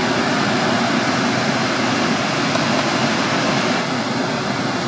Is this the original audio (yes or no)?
yes